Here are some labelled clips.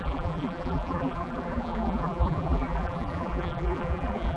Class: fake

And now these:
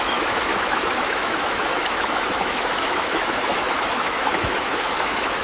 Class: fake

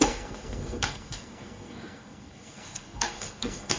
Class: fake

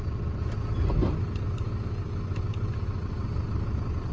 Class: real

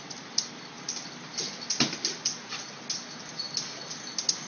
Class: real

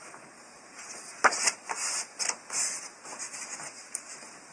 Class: real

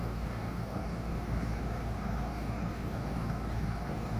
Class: fake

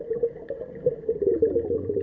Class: real